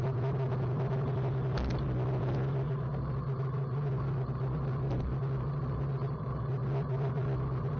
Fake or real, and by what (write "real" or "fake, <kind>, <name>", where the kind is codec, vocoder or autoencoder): real